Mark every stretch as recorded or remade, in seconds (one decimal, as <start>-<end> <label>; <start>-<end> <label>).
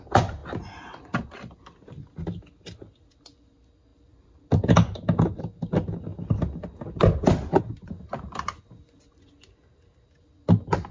0.0-3.9 recorded; 3.9-5.4 remade; 5.4-6.1 recorded; 6.1-7.6 remade; 7.6-10.9 recorded